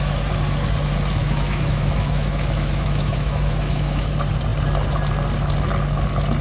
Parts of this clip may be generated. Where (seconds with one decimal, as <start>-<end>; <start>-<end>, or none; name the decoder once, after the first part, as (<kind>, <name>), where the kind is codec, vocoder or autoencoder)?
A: 1.2-4.1 (autoencoder, DAC-VAE)

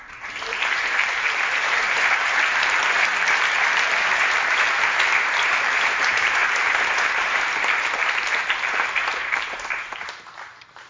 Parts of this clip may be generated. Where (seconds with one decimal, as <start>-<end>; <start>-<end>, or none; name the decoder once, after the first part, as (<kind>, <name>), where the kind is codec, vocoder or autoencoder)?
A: 0.0-2.8 (vocoder, BigVGAN v2); 4.2-10.9

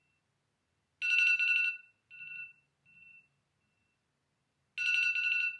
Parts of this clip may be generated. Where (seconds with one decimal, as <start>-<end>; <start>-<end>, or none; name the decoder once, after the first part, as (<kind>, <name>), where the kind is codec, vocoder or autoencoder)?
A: none

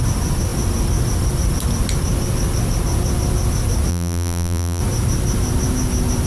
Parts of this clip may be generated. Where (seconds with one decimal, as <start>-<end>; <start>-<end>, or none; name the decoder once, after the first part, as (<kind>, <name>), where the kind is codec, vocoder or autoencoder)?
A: 3.9-4.8 (vocoder, BigVGAN v2)

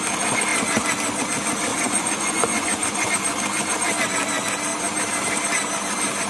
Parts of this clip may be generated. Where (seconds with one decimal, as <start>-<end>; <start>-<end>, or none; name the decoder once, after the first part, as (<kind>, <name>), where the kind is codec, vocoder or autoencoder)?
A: 1.7-3.1 (vocoder, Vocos)

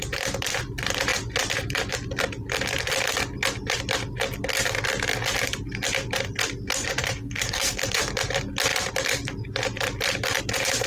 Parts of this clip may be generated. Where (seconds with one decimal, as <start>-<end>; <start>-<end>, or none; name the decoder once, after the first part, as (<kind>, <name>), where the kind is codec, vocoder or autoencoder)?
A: 7.0-8.0 (codec, SNAC)

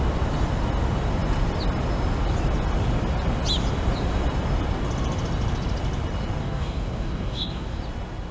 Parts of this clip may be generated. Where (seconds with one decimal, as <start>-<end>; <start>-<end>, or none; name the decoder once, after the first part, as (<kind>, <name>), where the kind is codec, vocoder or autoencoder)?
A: 6.4-7.8 (codec, DAC)

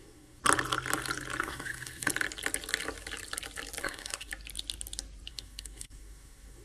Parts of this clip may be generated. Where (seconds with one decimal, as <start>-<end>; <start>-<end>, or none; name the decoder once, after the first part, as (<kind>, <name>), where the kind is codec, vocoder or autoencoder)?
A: 0.0-0.4 (codec, SNAC); 1.4-2.1; 3.8-4.3; 5.3-6.6